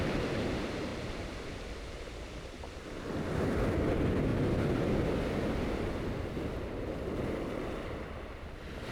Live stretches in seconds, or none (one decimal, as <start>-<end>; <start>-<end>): 0.0-0.9; 2.0-8.9